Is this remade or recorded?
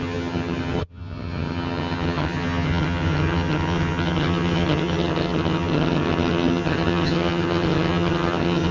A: remade